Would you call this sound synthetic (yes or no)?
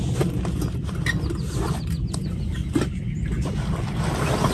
no